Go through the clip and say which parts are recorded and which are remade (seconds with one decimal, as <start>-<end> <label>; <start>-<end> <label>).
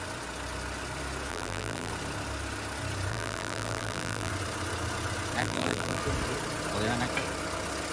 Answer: 0.0-1.3 recorded; 1.3-1.9 remade; 1.9-3.1 recorded; 3.1-4.3 remade; 4.3-5.4 recorded; 5.4-6.0 remade; 6.0-7.9 recorded